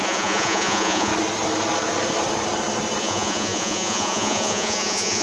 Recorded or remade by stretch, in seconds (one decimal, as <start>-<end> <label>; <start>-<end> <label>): 0.0-1.1 remade; 1.1-3.0 recorded; 3.0-5.2 remade